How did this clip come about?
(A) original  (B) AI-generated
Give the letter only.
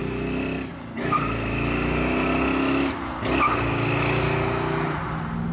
A